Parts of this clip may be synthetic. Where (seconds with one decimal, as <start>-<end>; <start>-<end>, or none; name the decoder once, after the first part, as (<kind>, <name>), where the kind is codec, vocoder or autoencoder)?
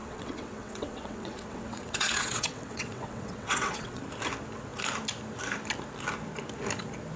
0.0-4.0 (vocoder, WaveNeXt)